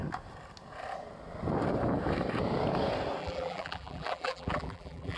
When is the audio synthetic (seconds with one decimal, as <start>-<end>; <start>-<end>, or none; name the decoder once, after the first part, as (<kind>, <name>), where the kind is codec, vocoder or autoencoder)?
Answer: 3.2-5.2 (vocoder, BigVGAN v2)

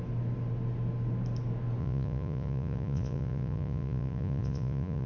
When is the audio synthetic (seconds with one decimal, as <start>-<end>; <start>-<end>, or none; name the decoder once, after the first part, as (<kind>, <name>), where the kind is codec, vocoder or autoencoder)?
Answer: 1.8-5.1 (vocoder, Vocos)

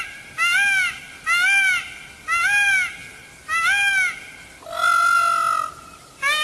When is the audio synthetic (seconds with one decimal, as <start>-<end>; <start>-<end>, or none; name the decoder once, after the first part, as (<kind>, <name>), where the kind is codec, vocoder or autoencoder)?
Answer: none

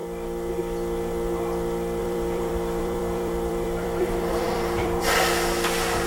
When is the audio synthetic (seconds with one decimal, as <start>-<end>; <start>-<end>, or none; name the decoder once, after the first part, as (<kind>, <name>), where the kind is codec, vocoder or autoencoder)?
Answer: 2.0-5.1 (vocoder, BigVGAN v2)

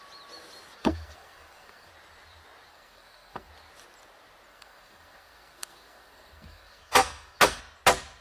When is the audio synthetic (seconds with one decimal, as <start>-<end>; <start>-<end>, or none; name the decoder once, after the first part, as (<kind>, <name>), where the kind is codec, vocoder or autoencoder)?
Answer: 0.8-1.9 (codec, SNAC); 2.7-3.5; 4.5-7.6

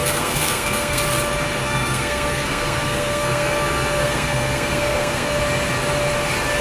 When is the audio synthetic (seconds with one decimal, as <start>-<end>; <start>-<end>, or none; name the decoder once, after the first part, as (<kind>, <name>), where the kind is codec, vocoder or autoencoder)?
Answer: 0.0-1.0 (codec, SNAC); 1.6-5.4

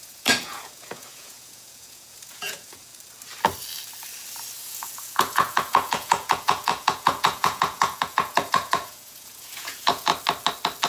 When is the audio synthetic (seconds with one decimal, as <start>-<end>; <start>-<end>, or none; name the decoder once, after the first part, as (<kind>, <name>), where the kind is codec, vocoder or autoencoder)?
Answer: 0.0-2.9 (vocoder, Vocos); 4.6-10.1